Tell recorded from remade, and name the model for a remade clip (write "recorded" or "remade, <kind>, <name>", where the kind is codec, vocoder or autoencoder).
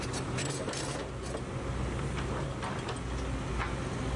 recorded